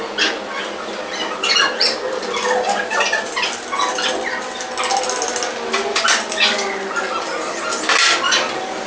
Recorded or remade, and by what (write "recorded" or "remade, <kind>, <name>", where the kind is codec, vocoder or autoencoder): recorded